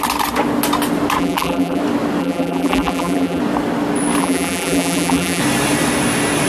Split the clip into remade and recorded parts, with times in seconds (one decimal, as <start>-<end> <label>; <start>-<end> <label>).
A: 0.0-1.2 recorded; 1.2-1.8 remade; 1.8-2.2 recorded; 2.2-3.4 remade; 3.4-4.2 recorded; 4.2-5.4 remade; 5.4-6.5 recorded